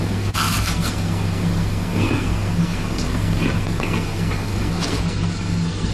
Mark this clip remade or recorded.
remade